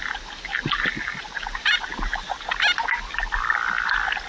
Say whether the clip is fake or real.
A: real